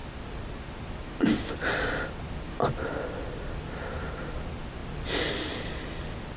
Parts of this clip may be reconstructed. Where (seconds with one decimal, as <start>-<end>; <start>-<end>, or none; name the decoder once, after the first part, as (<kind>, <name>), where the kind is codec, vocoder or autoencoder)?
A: none

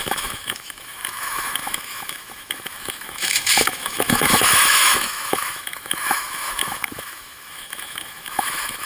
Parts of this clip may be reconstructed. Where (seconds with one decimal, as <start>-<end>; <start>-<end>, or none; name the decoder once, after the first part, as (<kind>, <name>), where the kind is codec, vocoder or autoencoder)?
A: 0.0-8.9 (autoencoder, DAC-VAE)

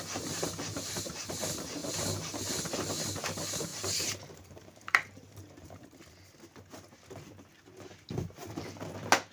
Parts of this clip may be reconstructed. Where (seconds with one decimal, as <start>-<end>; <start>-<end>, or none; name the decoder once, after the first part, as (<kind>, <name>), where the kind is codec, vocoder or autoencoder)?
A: 3.7-5.8 (vocoder, BigVGAN v2)

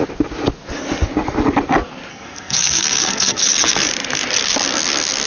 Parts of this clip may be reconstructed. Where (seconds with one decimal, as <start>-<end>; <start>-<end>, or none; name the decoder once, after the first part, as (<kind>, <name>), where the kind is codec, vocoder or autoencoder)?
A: 2.1-3.4 (codec, SNAC)

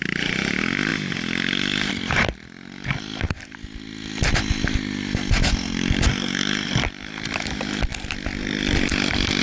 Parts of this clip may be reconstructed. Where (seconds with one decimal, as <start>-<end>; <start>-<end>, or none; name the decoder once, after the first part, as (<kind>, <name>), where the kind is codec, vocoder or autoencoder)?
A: none

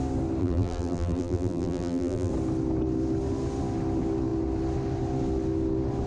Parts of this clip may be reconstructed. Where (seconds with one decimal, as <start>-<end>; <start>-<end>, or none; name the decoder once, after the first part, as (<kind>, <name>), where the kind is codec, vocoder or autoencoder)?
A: 0.4-2.3 (vocoder, BigVGAN v2)

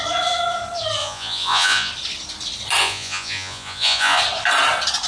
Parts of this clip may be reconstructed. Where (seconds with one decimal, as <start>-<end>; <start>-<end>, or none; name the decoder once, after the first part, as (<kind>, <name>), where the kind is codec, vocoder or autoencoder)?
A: 1.0-1.9 (vocoder, Vocos); 2.8-4.2